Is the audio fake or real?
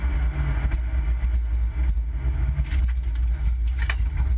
real